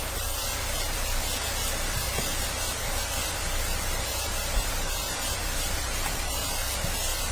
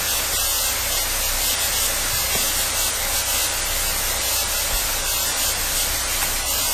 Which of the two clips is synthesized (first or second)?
first